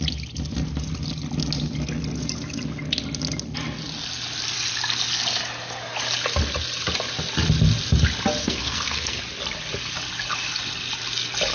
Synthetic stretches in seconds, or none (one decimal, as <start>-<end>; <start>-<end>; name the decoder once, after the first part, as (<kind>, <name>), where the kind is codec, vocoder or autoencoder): 8.4-9.2 (codec, SNAC)